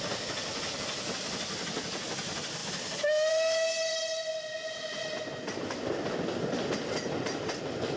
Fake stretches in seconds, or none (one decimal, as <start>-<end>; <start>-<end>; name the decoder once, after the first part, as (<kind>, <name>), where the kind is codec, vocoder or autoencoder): none